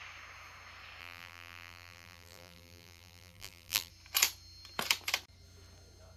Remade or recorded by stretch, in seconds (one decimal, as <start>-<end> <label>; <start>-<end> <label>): 0.0-1.0 recorded; 1.0-3.9 remade; 3.9-6.2 recorded